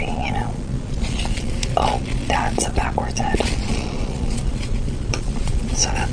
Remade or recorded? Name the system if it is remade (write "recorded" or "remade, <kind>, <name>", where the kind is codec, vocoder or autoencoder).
remade, vocoder, Vocos